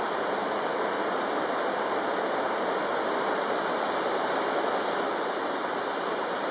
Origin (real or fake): real